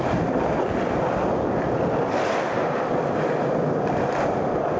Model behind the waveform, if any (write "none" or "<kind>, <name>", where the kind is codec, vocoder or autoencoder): none